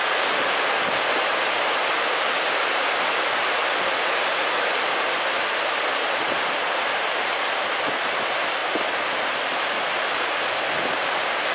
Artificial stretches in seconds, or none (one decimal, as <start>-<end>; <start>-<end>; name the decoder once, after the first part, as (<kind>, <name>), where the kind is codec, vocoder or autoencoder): none